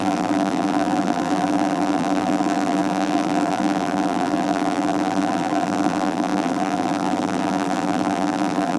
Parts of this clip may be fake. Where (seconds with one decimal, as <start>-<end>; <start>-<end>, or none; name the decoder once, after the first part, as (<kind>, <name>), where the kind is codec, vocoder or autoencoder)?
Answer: 0.0-8.8 (vocoder, BigVGAN v2)

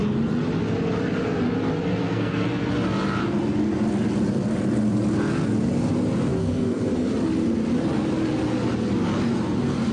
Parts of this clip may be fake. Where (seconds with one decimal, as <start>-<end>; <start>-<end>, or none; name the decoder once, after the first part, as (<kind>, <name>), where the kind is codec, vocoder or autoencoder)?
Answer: 2.0-2.7 (codec, SNAC); 6.3-7.1

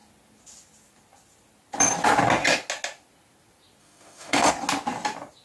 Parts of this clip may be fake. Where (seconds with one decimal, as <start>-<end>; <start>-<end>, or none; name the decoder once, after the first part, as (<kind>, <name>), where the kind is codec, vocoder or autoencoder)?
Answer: 3.8-4.5 (autoencoder, DAC-VAE)

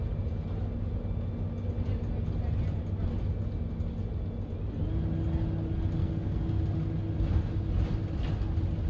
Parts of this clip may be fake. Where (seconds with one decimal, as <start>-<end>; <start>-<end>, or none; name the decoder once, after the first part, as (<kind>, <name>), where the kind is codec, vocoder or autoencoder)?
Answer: 6.0-6.6 (codec, SNAC)

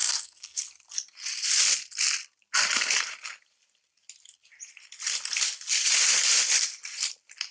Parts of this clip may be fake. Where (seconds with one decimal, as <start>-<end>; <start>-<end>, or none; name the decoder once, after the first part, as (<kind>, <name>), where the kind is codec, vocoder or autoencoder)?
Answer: 0.0-0.6 (codec, SNAC)

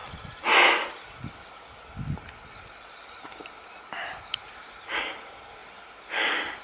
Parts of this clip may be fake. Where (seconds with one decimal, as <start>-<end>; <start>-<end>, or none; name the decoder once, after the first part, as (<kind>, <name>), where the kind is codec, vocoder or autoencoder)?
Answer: none